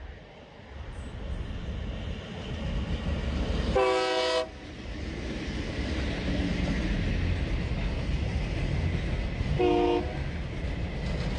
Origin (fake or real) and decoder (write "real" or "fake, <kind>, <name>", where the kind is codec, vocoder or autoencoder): real